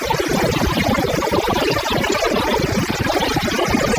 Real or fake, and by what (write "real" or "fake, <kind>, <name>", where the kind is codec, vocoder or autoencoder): real